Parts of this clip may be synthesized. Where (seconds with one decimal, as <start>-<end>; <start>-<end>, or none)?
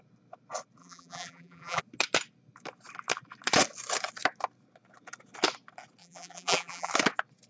0.8-1.8; 6.0-6.9